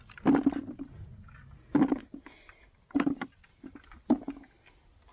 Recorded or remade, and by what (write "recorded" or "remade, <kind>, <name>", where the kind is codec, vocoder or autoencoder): recorded